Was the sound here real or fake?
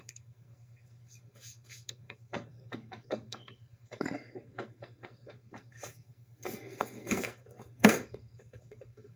fake